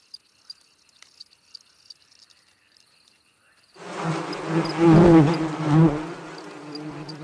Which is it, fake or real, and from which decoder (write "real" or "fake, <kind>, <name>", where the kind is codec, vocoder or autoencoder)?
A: real